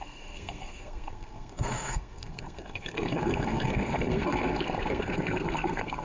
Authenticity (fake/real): fake